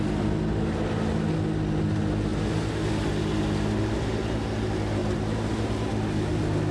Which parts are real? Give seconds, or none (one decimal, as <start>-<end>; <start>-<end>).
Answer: 0.0-5.0; 5.5-6.7